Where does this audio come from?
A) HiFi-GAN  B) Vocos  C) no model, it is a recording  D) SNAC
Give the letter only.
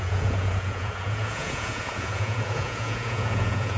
B